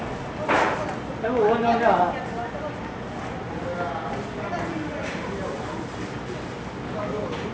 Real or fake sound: real